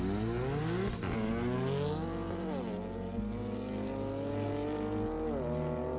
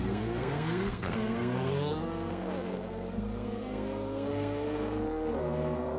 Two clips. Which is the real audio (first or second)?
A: first